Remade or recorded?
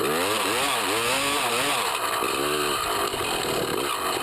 recorded